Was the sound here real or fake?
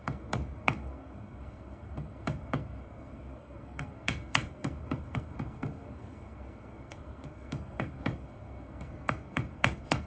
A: fake